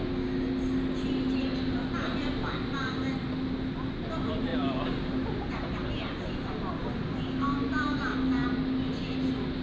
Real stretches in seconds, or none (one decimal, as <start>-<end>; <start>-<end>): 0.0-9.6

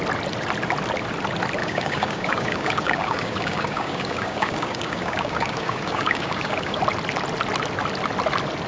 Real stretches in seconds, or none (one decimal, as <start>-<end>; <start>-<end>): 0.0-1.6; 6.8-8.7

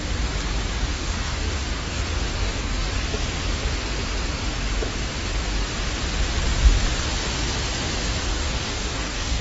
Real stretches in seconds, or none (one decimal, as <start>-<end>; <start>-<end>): 0.0-0.9; 2.0-2.4; 2.9-8.3

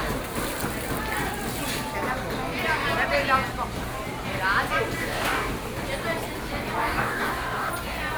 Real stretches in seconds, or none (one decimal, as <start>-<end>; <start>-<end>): 0.0-5.0; 5.5-6.8; 7.7-8.2

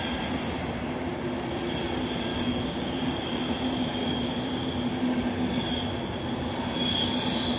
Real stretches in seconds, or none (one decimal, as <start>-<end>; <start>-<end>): 0.0-2.3; 3.4-4.0; 4.6-7.6

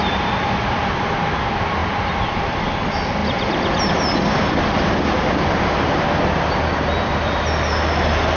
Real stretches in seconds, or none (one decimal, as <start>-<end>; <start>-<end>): 0.0-8.4

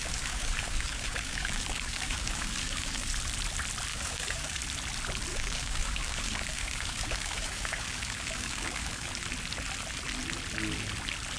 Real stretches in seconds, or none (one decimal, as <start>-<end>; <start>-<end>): 3.1-3.9; 4.6-5.3; 9.1-11.4